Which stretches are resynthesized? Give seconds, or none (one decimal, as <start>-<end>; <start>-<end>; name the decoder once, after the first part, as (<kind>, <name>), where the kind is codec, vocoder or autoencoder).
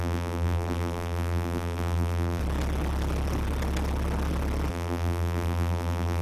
0.0-2.4 (vocoder, BigVGAN v2); 4.7-6.2